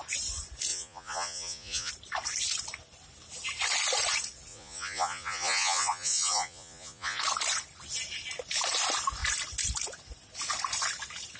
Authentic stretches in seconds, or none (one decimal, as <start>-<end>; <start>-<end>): 0.0-0.7; 1.9-4.5; 7.2-11.4